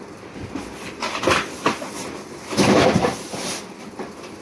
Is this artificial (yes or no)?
yes